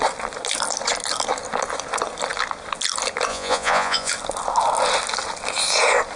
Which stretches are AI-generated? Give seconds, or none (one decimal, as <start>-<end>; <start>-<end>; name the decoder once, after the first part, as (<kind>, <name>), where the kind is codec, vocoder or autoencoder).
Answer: 3.3-4.1 (vocoder, Vocos)